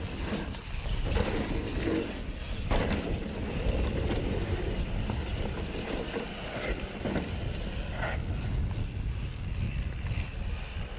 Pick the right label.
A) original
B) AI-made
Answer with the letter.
A